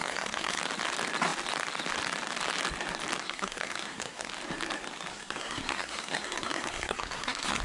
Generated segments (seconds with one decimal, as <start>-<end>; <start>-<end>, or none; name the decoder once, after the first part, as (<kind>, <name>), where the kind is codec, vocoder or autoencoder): 0.0-0.6 (codec, SNAC); 3.2-4.3; 5.1-7.6